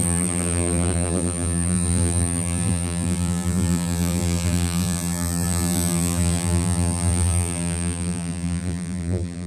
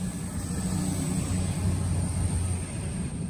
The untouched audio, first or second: second